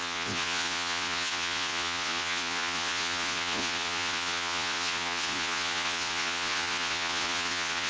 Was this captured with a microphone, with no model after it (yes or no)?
no